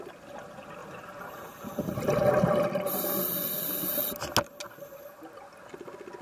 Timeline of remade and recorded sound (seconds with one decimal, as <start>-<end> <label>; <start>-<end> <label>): 0.0-0.8 recorded; 0.8-1.8 remade; 1.8-6.2 recorded